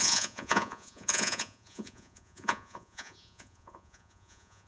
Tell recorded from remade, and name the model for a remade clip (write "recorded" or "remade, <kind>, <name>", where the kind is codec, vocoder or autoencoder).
remade, vocoder, Vocos